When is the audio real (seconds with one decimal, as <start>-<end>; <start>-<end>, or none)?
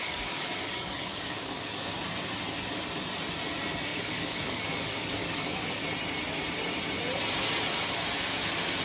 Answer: 1.9-3.9; 5.8-8.8